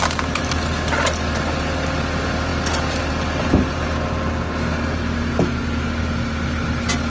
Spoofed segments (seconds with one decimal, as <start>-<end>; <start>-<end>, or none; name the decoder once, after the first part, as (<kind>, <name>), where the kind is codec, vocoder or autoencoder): none